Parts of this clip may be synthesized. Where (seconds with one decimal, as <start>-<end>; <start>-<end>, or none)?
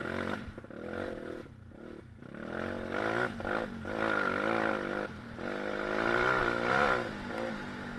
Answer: none